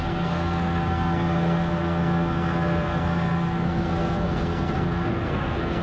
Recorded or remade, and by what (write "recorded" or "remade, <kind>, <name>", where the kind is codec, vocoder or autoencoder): remade, codec, SNAC